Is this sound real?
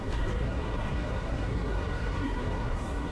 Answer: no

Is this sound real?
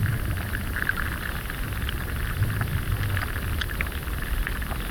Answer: yes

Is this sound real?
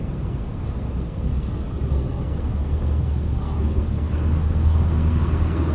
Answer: no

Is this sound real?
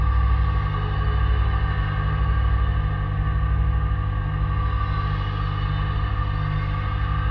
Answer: yes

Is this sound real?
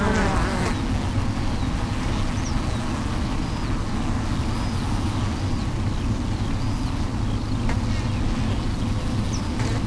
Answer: yes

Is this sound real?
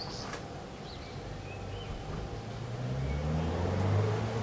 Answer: yes